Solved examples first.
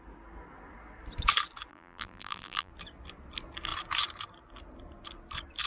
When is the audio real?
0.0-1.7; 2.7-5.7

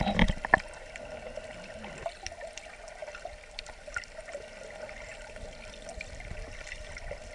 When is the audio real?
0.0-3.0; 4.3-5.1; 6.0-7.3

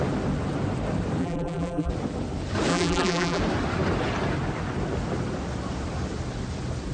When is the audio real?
0.0-1.2; 1.9-2.7; 3.4-6.9